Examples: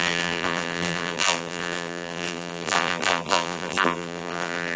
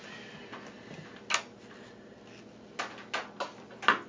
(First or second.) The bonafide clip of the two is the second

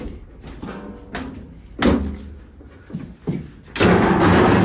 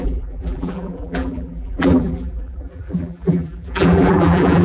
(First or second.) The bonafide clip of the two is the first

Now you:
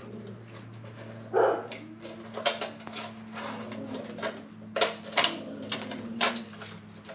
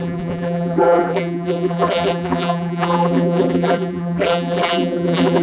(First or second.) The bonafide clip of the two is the first